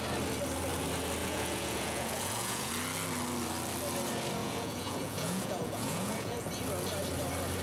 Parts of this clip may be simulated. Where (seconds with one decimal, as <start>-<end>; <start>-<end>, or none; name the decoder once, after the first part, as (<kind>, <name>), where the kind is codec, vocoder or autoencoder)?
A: 1.2-2.7 (vocoder, Vocos); 4.4-6.5